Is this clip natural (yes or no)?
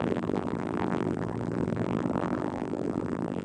no